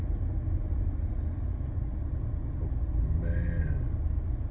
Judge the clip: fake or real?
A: real